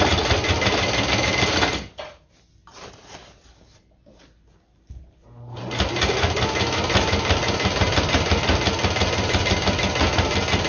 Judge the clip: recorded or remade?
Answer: recorded